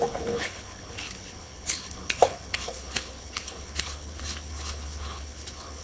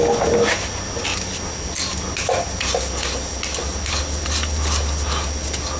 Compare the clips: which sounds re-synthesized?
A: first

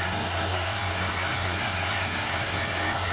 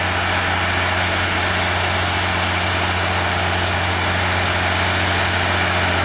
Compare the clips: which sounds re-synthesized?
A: first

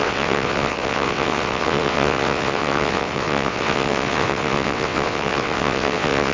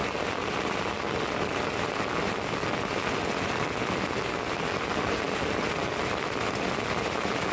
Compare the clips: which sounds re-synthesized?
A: first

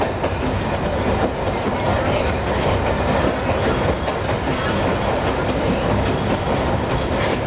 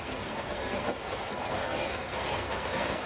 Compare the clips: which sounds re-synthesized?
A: second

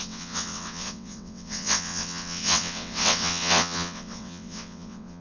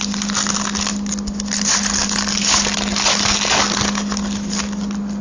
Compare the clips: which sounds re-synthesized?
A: first